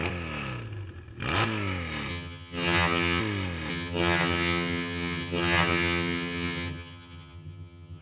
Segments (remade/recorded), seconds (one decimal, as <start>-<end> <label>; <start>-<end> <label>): 0.0-2.1 recorded; 2.1-3.2 remade; 3.2-3.7 recorded; 3.7-8.0 remade